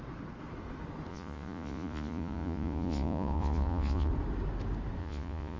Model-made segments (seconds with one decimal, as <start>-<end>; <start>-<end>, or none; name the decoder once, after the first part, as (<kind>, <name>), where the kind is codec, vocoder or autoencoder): 1.1-4.1 (vocoder, Vocos); 5.0-5.6